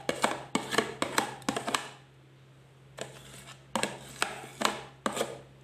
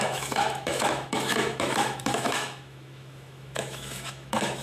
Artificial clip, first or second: second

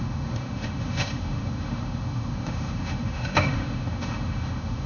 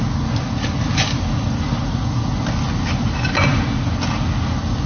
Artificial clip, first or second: first